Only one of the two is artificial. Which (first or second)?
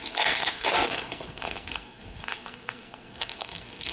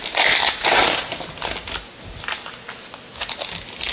first